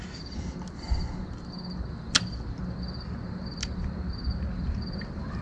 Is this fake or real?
real